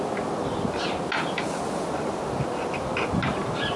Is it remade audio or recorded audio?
recorded